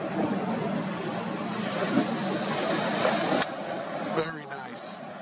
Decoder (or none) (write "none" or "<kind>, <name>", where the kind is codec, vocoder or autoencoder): none